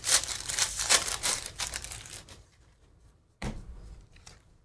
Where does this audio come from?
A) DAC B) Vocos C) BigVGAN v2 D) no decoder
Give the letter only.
C